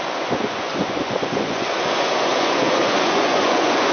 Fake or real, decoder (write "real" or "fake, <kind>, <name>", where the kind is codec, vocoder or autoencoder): fake, vocoder, Vocos